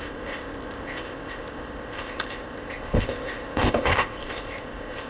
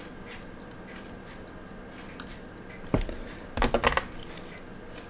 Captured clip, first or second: second